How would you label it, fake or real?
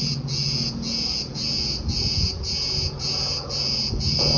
fake